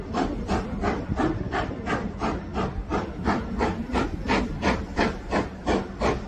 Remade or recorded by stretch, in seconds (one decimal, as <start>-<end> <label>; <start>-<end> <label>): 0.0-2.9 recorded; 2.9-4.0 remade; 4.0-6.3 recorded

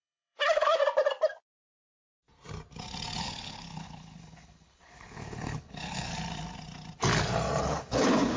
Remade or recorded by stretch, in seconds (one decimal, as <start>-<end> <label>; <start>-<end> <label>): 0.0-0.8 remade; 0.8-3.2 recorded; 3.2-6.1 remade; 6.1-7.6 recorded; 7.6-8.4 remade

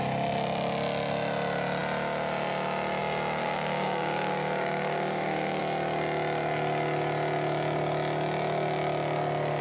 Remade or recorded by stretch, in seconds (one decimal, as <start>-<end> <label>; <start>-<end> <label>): 0.0-3.4 recorded; 3.4-5.6 remade; 5.6-9.6 recorded

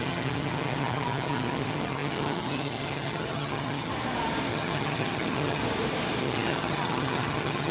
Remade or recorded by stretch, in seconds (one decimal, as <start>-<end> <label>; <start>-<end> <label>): 0.0-3.9 remade; 3.9-4.5 recorded; 4.5-5.6 remade; 5.6-6.2 recorded; 6.2-7.7 remade

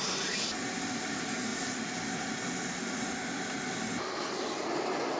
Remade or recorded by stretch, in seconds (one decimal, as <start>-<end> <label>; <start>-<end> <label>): 0.0-5.2 recorded

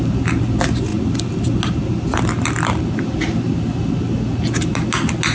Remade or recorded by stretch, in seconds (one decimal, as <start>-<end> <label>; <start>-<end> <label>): 0.0-5.3 recorded

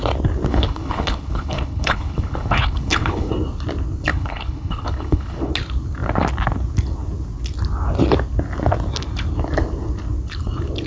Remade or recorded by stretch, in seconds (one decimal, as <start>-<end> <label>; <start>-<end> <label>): 0.0-0.5 recorded; 0.5-3.3 remade; 3.3-4.1 recorded; 4.1-5.5 remade; 5.5-10.9 recorded